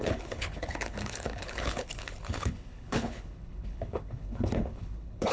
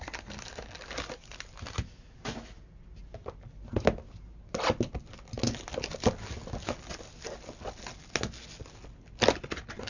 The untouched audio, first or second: second